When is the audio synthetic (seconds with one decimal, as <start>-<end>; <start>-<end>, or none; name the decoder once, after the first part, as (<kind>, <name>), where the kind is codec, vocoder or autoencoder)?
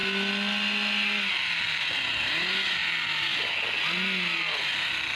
none